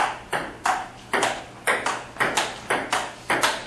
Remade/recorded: recorded